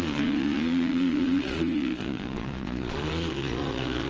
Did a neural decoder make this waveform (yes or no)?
yes